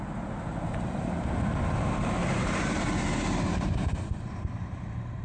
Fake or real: fake